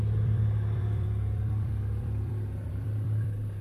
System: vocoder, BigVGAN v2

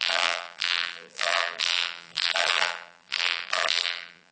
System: vocoder, BigVGAN v2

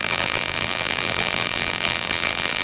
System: vocoder, BigVGAN v2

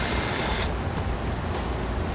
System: none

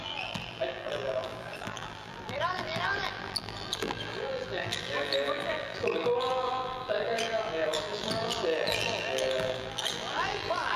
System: vocoder, BigVGAN v2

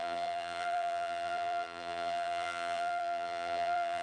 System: vocoder, BigVGAN v2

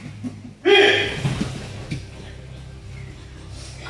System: none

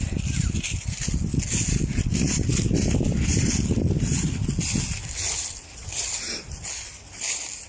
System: none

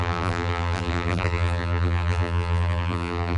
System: vocoder, BigVGAN v2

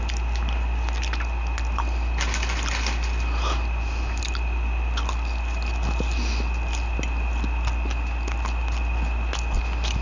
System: none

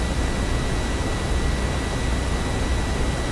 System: none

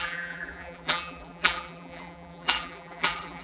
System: vocoder, BigVGAN v2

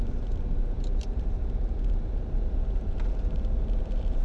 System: vocoder, BigVGAN v2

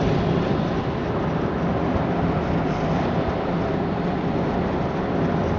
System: none